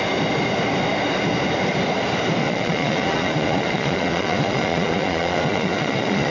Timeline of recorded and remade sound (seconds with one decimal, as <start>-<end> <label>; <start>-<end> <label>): 0.0-2.4 recorded; 2.4-6.3 remade